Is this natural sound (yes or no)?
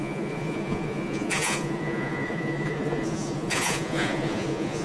no